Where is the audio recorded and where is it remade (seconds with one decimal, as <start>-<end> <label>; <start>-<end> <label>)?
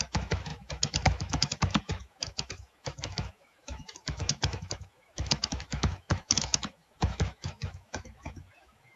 0.0-9.0 remade